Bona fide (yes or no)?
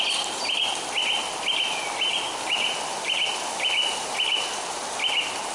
yes